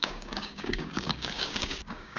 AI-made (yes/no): yes